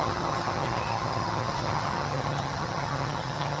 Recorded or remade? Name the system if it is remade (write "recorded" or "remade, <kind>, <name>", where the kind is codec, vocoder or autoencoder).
remade, vocoder, HiFi-GAN